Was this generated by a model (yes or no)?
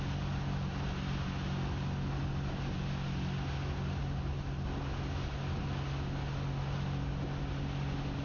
no